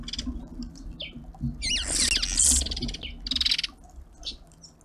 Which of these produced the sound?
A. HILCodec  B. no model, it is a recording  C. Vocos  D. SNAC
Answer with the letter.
B